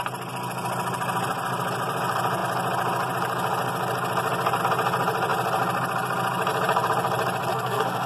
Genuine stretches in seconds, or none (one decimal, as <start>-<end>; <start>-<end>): 0.0-7.5